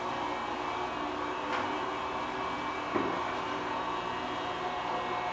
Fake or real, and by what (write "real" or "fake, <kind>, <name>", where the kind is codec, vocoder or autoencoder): real